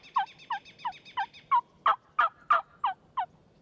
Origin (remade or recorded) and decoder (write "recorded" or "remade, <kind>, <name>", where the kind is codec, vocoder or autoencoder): recorded